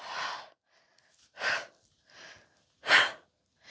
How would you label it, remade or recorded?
recorded